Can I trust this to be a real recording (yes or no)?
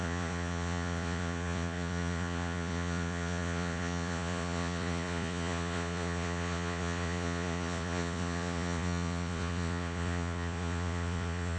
no